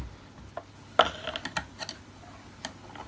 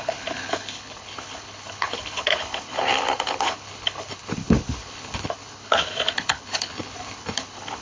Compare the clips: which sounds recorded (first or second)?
first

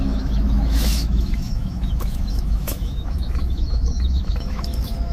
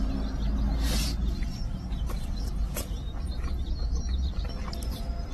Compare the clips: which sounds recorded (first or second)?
second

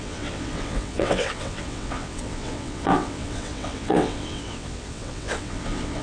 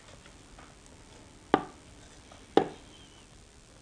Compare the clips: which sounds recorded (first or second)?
second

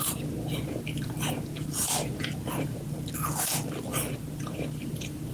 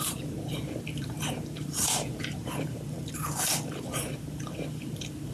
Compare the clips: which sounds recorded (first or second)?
first